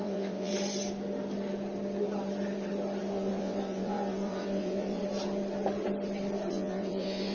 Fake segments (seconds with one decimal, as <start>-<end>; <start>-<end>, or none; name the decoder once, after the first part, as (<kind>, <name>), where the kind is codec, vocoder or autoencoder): 0.0-0.5 (vocoder, WaveNeXt); 3.1-5.0; 6.5-7.3